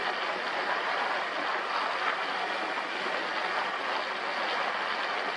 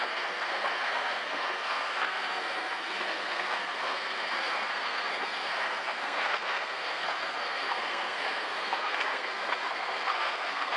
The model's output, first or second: second